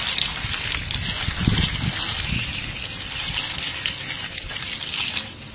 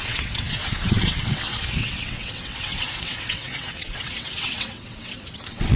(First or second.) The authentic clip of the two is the first